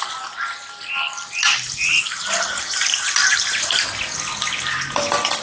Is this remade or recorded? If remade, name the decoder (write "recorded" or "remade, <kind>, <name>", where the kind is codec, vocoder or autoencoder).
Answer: recorded